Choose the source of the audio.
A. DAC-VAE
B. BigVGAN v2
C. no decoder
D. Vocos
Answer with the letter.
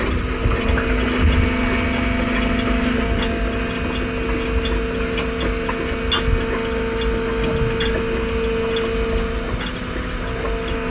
C